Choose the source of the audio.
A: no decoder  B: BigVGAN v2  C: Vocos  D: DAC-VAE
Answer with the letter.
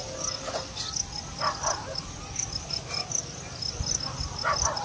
A